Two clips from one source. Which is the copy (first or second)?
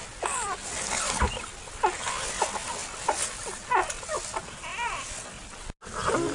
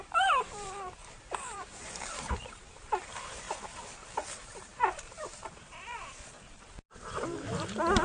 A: second